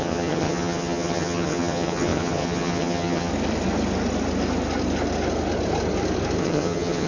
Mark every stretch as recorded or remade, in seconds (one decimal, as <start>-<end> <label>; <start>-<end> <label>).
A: 0.0-3.3 remade; 3.3-6.4 recorded; 6.4-7.1 remade